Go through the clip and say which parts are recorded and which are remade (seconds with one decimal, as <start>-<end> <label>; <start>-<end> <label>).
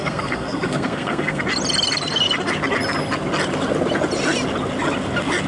0.0-1.4 remade; 1.4-5.5 recorded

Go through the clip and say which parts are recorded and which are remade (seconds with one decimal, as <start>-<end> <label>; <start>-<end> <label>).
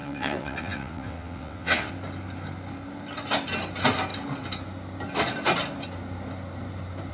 0.0-1.9 remade; 1.9-7.1 recorded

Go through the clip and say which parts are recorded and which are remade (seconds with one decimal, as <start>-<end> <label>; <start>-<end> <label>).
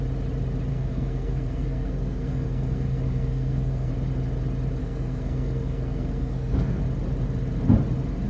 0.0-0.7 recorded; 0.7-3.9 remade; 3.9-4.8 recorded; 4.8-6.8 remade; 6.8-8.3 recorded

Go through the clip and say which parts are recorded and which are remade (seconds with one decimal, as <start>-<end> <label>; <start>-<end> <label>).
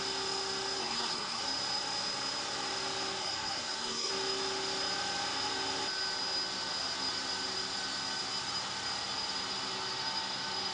0.0-0.8 recorded; 0.8-1.4 remade; 1.4-3.2 recorded; 3.2-4.1 remade; 4.1-10.7 recorded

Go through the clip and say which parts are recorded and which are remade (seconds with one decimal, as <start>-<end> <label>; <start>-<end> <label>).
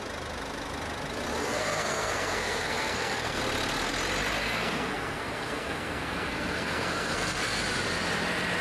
0.0-1.4 recorded; 1.4-3.4 remade; 3.4-4.4 recorded; 4.4-7.6 remade; 7.6-8.6 recorded